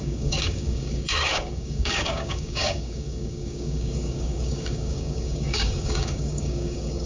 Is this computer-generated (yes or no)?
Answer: yes